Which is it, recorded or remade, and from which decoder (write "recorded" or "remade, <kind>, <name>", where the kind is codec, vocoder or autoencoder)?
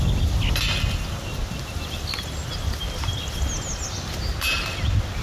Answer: recorded